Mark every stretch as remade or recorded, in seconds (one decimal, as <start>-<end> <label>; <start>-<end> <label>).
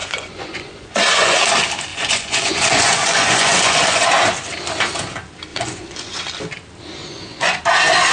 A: 0.0-1.4 remade; 1.4-1.9 recorded; 1.9-4.1 remade; 4.1-5.5 recorded; 5.5-6.2 remade; 6.2-7.0 recorded; 7.0-7.6 remade; 7.6-8.1 recorded